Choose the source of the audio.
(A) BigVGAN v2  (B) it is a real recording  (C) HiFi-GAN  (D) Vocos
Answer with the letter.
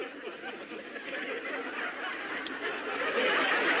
B